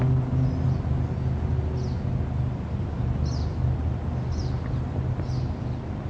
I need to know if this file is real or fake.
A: real